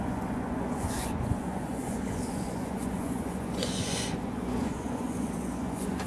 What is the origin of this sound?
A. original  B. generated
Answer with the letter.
B